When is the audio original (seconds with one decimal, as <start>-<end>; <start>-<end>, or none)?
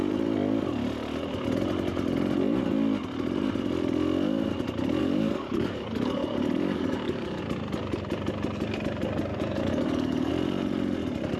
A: 0.0-5.0; 7.4-9.3; 10.3-11.4